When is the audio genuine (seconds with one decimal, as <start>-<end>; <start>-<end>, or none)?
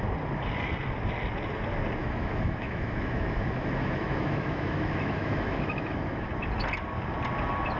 0.0-2.0; 6.3-7.8